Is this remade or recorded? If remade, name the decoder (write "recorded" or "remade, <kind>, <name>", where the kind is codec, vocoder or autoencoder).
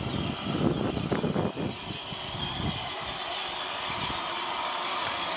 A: remade, vocoder, BigVGAN v2